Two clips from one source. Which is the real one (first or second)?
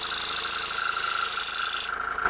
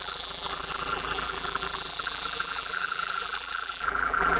first